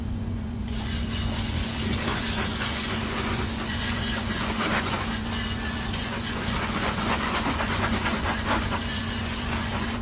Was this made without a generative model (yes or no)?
no